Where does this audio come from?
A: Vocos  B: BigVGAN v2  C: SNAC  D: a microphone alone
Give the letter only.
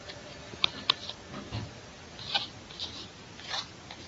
D